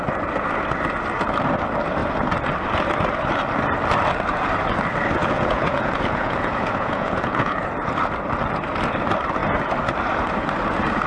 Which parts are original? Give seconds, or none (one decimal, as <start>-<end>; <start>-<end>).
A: 0.0-5.2; 7.6-11.1